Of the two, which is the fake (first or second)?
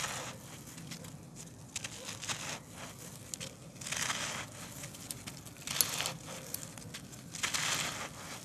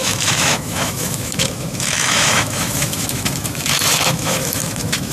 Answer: second